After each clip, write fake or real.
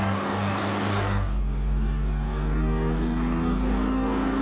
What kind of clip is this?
fake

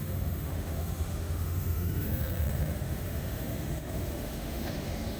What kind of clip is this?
fake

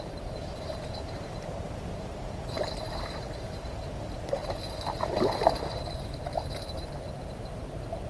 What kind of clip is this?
fake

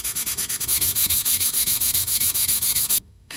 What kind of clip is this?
fake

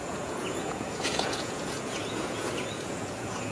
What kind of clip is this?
fake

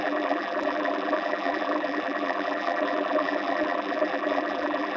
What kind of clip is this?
fake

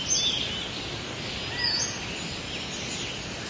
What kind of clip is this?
real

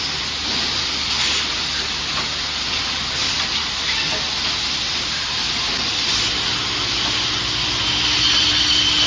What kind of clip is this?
real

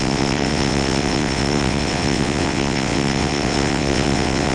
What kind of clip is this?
fake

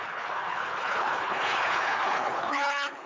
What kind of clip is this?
fake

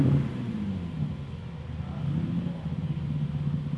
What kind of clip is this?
real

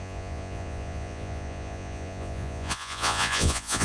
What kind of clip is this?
fake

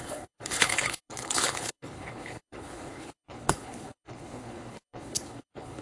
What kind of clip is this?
fake